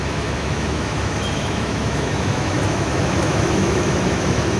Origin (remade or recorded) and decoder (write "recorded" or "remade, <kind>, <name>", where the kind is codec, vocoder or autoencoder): remade, autoencoder, DAC-VAE